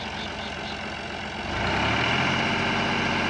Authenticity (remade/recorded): recorded